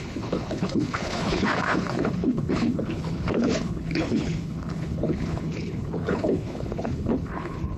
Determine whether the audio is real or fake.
fake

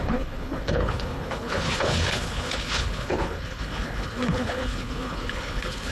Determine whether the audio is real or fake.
fake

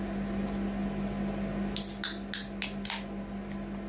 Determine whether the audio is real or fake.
real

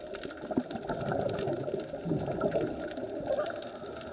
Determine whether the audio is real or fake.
real